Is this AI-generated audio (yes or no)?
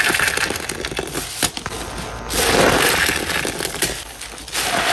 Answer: no